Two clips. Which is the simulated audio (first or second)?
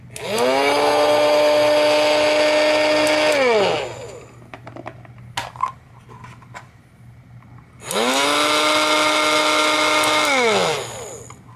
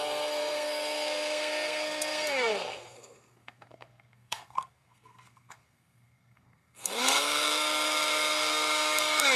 second